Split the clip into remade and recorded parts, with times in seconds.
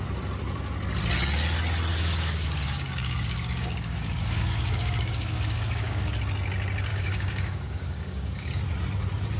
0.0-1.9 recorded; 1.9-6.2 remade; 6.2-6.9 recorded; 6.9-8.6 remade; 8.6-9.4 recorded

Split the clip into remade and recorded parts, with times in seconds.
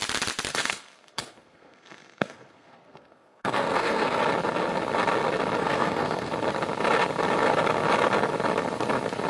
0.0-0.5 recorded; 0.5-4.2 remade; 4.2-5.6 recorded; 5.6-6.3 remade; 6.3-9.3 recorded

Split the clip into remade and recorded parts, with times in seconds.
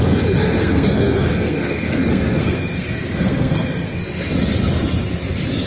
0.0-0.6 recorded; 0.6-4.0 remade; 4.0-5.7 recorded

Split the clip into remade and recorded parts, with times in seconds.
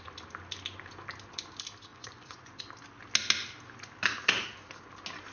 0.0-1.9 recorded; 1.9-2.6 remade; 2.6-5.3 recorded